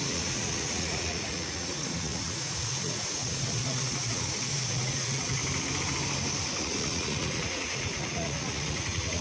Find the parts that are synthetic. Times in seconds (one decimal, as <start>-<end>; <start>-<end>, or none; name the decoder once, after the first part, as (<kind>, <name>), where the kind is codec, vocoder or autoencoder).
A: 0.0-5.4 (vocoder, Vocos); 6.6-9.2